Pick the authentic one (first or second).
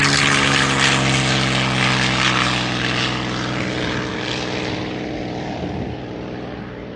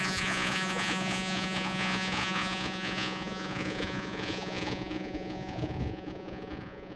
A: first